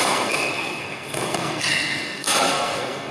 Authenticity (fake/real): fake